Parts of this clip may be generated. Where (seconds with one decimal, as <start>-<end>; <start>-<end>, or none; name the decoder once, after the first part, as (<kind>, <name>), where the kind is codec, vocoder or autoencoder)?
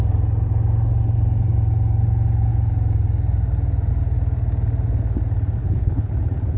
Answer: 5.6-6.1 (codec, HILCodec)